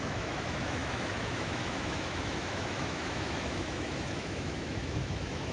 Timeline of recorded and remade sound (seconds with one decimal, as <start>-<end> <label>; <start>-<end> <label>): 0.0-5.5 remade